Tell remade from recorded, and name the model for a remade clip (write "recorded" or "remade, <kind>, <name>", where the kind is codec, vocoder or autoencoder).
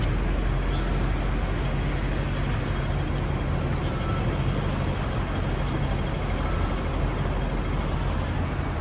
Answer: recorded